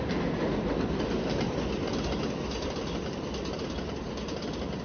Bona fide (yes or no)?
yes